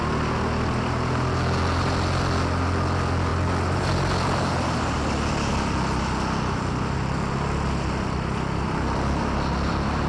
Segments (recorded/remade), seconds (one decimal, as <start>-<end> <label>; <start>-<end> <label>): 0.0-10.1 recorded